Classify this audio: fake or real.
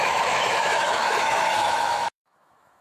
fake